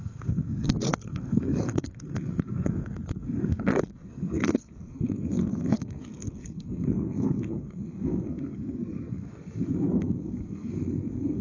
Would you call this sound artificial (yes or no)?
yes